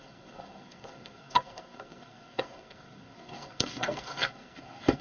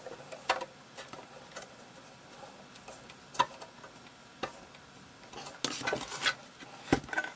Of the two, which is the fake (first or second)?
first